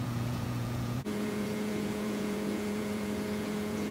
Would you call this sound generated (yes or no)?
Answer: yes